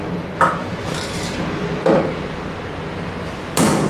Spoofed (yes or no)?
no